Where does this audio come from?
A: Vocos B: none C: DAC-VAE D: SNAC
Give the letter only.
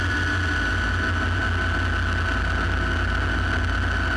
B